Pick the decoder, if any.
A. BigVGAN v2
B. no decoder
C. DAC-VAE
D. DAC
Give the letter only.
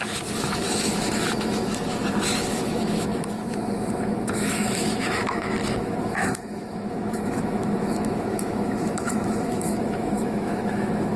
C